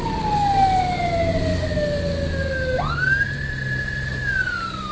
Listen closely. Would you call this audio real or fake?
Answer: real